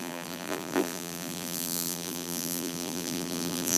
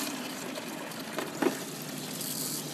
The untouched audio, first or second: second